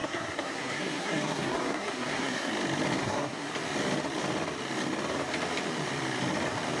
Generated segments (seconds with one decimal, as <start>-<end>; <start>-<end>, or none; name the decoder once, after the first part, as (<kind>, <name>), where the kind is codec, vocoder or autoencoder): 0.0-2.5 (codec, SNAC); 3.0-3.5